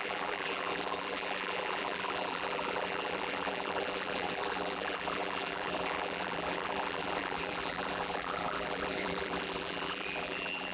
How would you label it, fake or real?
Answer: fake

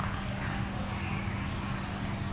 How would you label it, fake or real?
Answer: real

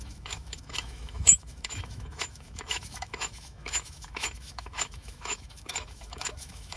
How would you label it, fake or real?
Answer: fake